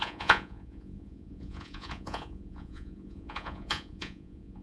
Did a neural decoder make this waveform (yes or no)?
yes